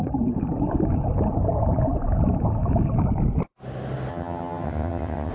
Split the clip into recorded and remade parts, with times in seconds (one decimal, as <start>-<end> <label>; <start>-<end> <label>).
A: 0.0-4.1 recorded; 4.1-5.3 remade